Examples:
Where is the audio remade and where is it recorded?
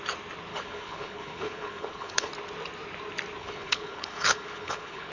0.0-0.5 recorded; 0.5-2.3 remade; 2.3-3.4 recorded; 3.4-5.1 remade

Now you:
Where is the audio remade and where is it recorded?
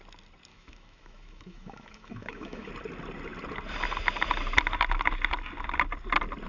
0.0-0.5 recorded; 0.5-2.7 remade; 2.7-6.5 recorded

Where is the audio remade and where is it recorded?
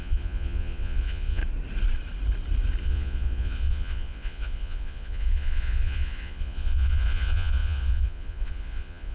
0.0-1.4 remade; 1.4-2.8 recorded; 2.8-9.1 remade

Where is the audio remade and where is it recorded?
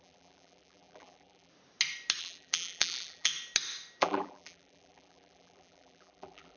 0.0-1.5 remade; 1.5-2.2 recorded; 2.2-3.3 remade; 3.3-4.0 recorded; 4.0-6.6 remade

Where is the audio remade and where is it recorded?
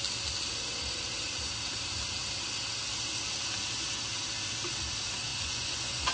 0.0-5.3 recorded; 5.3-6.1 remade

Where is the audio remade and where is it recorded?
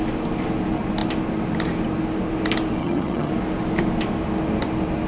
0.0-2.8 recorded; 2.8-3.3 remade; 3.3-5.1 recorded